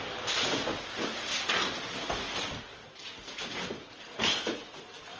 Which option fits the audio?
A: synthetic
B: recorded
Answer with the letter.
B